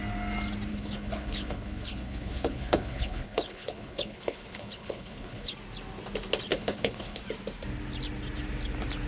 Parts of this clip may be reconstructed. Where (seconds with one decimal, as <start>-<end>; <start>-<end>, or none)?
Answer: 0.7-5.5; 6.5-7.2